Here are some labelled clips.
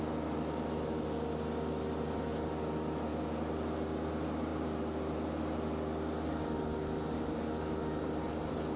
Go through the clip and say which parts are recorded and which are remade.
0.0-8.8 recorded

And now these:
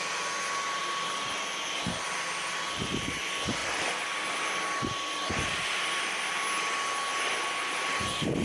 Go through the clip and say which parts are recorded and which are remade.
0.0-8.4 recorded

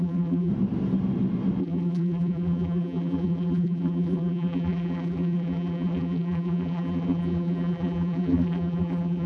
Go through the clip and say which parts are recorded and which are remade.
0.0-0.5 remade; 0.5-1.6 recorded; 1.6-9.3 remade